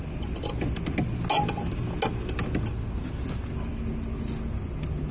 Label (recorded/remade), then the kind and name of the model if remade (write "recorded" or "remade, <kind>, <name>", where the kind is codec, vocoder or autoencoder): recorded